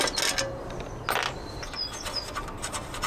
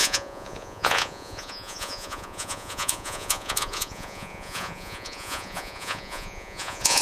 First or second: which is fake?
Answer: second